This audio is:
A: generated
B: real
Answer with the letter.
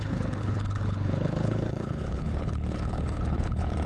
A